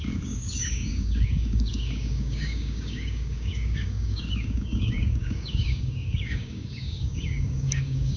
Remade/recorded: remade